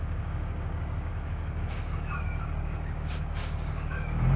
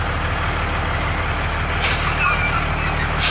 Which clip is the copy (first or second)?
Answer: first